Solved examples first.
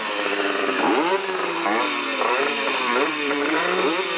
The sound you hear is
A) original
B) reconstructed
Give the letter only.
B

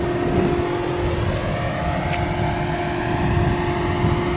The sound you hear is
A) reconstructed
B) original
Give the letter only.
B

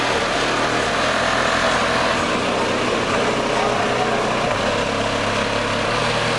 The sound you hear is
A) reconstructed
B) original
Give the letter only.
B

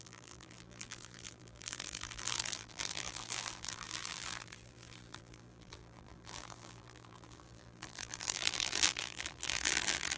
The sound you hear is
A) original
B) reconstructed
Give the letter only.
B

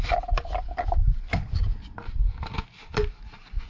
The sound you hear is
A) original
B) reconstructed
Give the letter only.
A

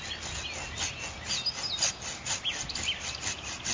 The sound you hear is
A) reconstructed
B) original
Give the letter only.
B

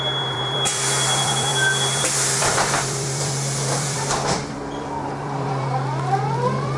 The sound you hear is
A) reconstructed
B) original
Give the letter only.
A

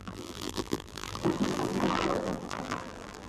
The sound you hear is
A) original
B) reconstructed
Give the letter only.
B